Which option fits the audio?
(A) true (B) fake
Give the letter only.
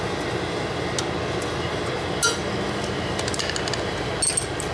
A